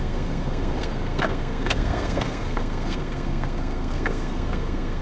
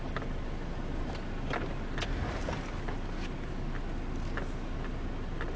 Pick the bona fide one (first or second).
second